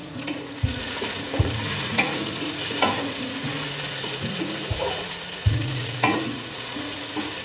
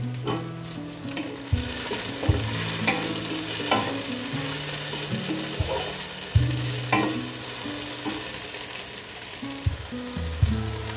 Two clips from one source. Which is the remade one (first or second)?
first